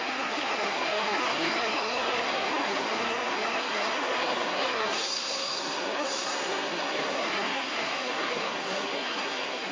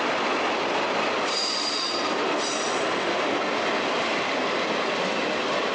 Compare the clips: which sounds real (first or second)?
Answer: second